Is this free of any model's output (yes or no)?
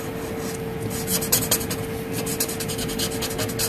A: yes